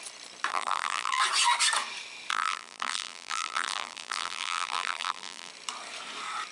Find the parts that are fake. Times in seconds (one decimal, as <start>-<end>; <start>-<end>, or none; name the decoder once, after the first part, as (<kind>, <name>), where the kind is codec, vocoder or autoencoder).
0.5-1.2 (vocoder, BigVGAN v2); 2.3-5.5